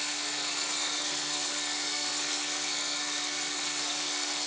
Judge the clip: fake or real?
fake